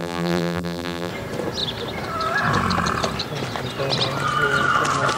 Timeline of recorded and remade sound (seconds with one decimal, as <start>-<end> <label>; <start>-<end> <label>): 0.0-1.1 remade; 1.1-5.2 recorded